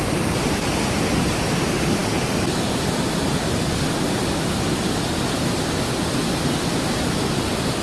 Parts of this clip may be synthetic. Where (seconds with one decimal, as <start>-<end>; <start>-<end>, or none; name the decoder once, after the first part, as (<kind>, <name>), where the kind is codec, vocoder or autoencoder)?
none